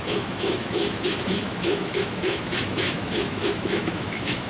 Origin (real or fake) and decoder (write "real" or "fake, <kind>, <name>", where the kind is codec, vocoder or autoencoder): fake, autoencoder, DAC-VAE